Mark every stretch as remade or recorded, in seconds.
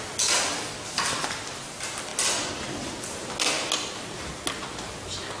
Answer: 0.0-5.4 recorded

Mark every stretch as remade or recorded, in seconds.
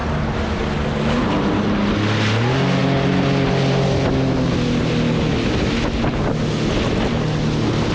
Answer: 0.0-7.9 recorded